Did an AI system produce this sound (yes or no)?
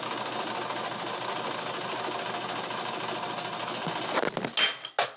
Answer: no